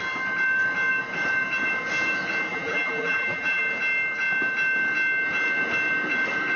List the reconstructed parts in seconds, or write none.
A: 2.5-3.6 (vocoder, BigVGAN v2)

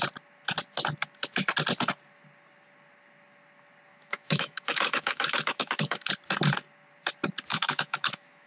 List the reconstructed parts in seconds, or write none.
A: 3.9-6.1 (autoencoder, DAC-VAE); 7.5-8.5

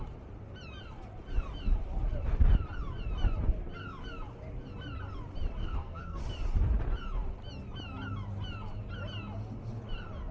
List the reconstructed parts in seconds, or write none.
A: 5.6-6.2 (codec, SNAC)

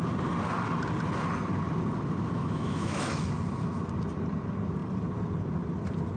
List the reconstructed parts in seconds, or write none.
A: 2.4-3.1 (autoencoder, DAC-VAE)

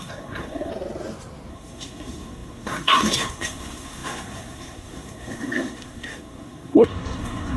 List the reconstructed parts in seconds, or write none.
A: 0.0-0.7 (codec, SNAC); 1.5-7.6

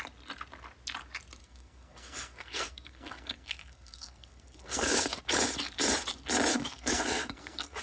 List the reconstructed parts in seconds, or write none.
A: 1.4-5.2 (codec, SNAC); 6.5-7.8